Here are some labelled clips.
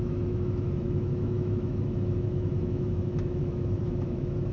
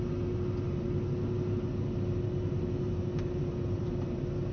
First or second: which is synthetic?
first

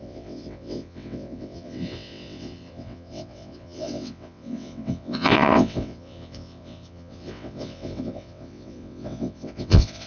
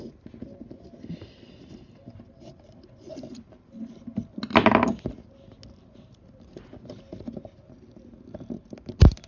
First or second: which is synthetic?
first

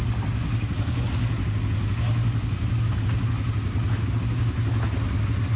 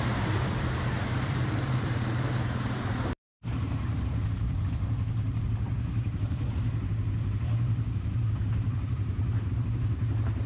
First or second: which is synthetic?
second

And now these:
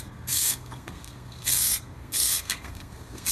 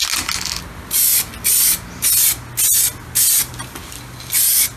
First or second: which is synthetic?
first